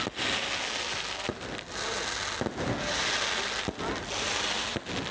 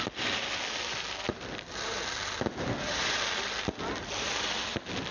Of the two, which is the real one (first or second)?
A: first